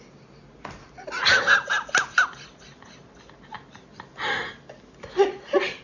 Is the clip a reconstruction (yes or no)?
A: no